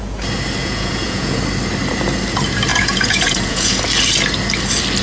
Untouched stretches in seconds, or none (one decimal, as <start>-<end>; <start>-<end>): 0.0-0.6; 1.4-2.7; 3.8-5.0

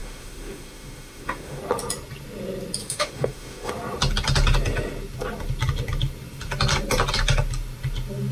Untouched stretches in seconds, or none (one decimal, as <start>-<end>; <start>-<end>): 1.6-2.8; 3.7-8.3

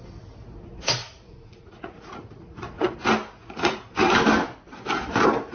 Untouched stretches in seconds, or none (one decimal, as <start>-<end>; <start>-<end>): 0.0-1.0; 3.0-3.4; 3.9-5.5